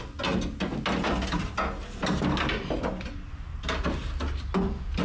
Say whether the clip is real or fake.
real